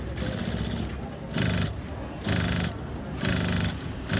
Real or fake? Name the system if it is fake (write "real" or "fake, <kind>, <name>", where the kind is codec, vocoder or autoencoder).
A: real